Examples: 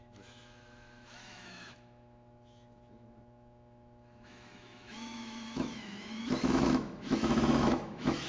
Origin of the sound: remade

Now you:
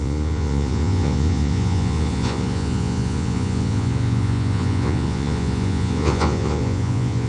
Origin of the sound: remade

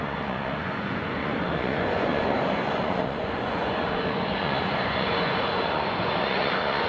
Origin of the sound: remade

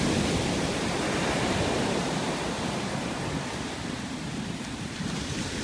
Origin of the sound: recorded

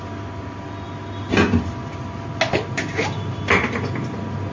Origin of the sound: recorded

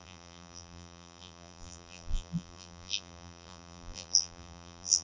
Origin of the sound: remade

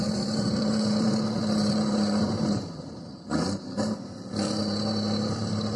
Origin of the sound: remade